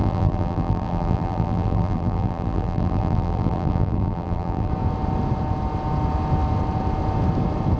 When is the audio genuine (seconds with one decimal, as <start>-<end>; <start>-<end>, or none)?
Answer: 4.7-7.8